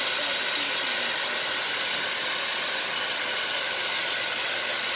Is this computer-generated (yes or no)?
no